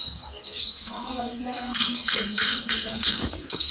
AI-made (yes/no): yes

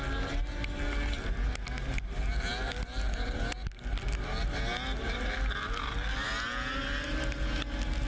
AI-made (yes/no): no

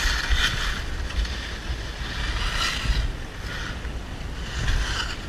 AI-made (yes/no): no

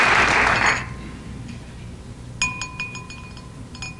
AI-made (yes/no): no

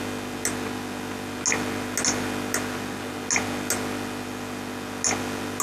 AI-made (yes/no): no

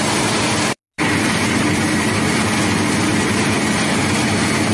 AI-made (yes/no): no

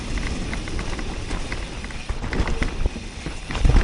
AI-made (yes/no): no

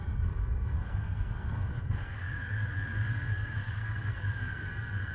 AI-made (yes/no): yes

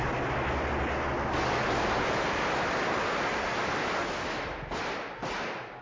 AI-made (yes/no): no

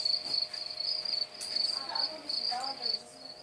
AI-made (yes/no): no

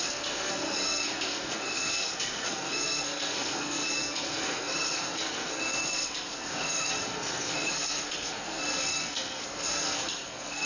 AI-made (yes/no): yes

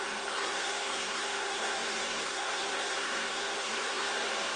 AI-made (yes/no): yes